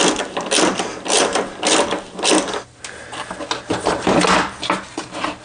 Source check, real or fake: real